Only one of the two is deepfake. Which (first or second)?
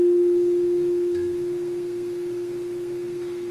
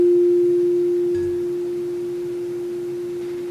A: first